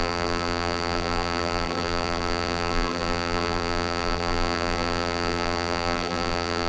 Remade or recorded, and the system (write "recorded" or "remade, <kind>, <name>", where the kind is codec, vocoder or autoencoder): remade, vocoder, BigVGAN v2